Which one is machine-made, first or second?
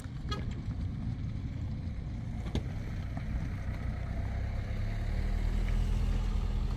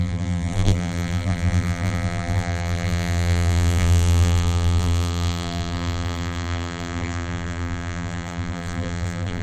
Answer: second